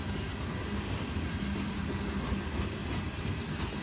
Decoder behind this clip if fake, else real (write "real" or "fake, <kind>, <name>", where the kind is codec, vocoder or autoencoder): real